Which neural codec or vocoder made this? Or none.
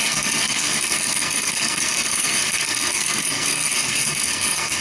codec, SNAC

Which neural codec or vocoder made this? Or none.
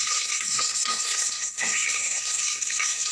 codec, SNAC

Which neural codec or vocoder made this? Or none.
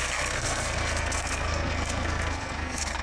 codec, SNAC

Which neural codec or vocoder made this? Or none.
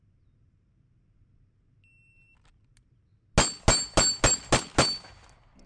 none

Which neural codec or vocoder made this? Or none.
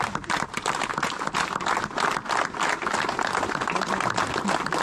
none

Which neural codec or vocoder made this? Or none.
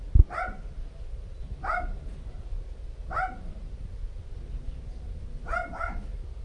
none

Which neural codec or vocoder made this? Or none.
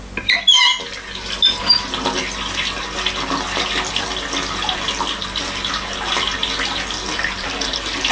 none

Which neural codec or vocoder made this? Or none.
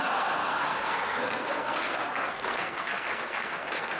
codec, SNAC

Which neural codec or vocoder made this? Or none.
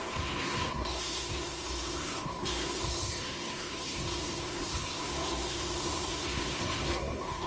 codec, SNAC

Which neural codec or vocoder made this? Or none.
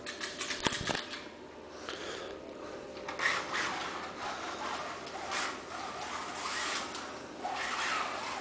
none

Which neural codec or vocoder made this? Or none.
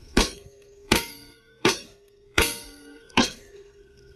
codec, SNAC